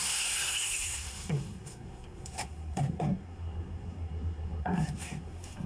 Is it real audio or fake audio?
fake